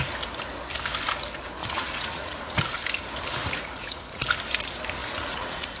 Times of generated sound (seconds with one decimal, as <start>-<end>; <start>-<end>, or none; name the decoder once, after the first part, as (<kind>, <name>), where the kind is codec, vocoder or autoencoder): 1.6-2.6 (vocoder, Vocos); 3.4-4.2; 5.0-5.8